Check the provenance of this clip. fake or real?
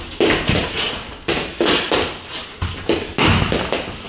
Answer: real